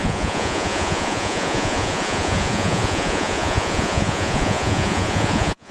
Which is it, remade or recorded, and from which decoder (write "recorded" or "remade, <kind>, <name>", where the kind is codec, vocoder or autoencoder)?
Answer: remade, vocoder, Vocos